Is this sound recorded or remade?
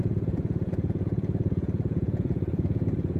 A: remade